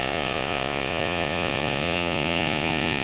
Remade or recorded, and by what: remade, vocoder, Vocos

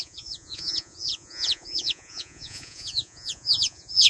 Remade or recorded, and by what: remade, vocoder, Vocos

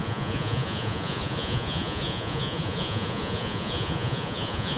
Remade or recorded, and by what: remade, vocoder, Vocos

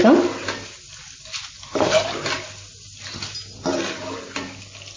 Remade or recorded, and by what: recorded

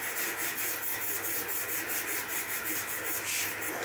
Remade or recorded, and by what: recorded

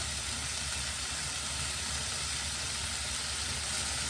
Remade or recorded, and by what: recorded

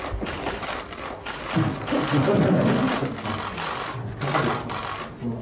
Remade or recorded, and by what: recorded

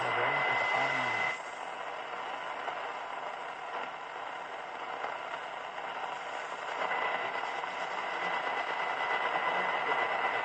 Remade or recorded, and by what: recorded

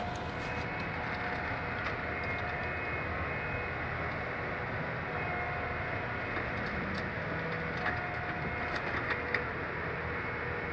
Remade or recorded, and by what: recorded